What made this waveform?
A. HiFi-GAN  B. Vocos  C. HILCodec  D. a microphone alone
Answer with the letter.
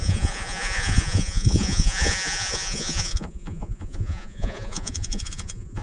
B